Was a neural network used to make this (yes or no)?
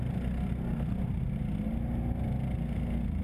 no